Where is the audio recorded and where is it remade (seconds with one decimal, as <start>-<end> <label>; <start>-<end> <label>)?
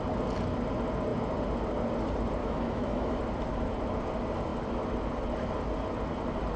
0.0-2.4 recorded; 2.4-3.2 remade; 3.2-6.6 recorded